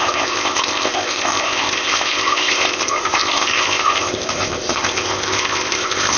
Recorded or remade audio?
remade